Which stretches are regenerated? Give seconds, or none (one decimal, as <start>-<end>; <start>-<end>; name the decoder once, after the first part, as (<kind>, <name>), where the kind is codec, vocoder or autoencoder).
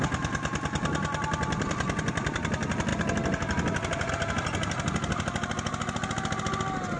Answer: none